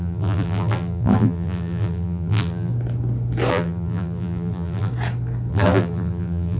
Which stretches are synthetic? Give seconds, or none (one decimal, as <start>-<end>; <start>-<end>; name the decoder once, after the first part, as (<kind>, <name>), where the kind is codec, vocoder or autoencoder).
0.0-2.7 (vocoder, BigVGAN v2); 3.5-4.9; 5.5-6.6